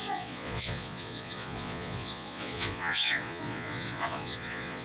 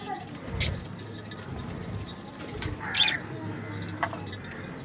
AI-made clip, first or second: first